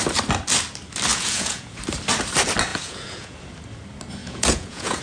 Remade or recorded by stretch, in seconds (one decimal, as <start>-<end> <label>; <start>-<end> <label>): 0.0-1.1 recorded; 1.1-1.8 remade; 1.8-2.7 recorded; 2.7-3.4 remade; 3.4-4.2 recorded; 4.2-5.0 remade